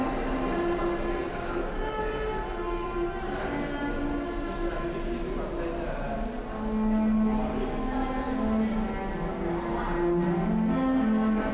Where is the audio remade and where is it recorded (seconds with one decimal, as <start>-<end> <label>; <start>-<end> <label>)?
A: 0.0-1.3 recorded; 1.3-2.0 remade; 2.0-11.5 recorded